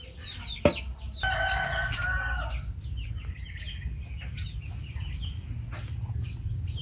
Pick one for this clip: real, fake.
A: real